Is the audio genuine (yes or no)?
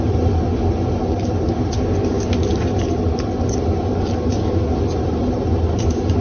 yes